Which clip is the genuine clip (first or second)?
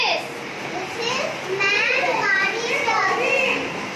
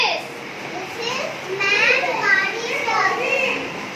first